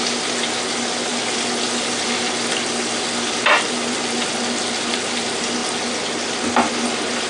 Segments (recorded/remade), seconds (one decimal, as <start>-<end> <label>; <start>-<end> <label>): 0.0-7.3 recorded